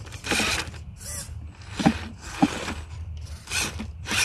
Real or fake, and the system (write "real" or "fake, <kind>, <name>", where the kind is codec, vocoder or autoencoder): real